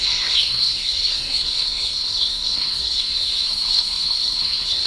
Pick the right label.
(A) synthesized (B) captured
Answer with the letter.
A